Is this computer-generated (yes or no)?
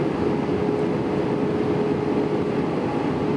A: no